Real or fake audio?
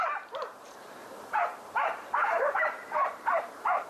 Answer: fake